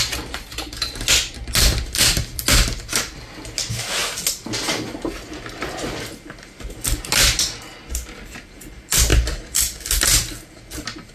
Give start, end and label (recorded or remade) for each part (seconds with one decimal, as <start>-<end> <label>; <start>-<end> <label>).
0.0-11.1 recorded